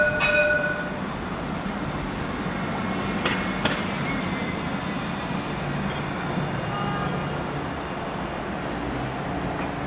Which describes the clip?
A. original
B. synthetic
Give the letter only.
A